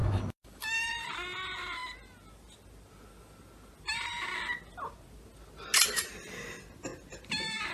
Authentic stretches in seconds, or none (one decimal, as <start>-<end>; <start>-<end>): 0.9-7.7